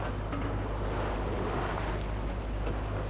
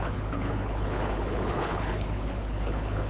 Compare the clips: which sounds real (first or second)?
first